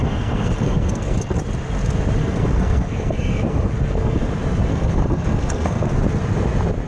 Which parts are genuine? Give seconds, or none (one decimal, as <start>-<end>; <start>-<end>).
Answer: 1.4-2.2; 4.2-4.7; 5.9-6.9